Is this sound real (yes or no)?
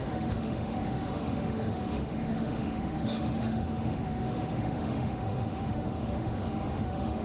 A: no